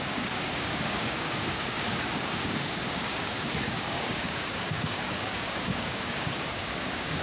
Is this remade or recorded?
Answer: remade